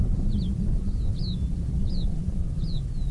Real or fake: real